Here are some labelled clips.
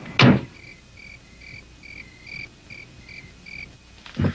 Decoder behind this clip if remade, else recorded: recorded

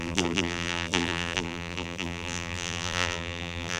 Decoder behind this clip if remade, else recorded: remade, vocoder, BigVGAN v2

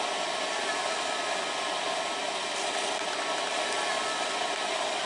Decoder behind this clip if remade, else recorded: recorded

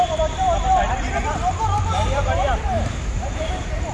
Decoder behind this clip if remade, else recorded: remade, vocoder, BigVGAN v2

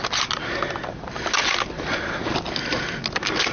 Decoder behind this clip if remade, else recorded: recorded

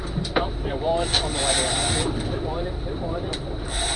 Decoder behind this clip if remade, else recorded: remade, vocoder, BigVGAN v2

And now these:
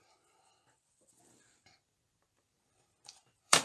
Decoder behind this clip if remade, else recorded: remade, vocoder, BigVGAN v2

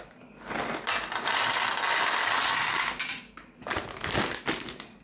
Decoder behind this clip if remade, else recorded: recorded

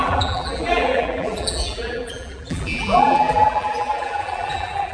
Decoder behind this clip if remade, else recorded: remade, vocoder, BigVGAN v2